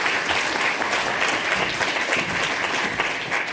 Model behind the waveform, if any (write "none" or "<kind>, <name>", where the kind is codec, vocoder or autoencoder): none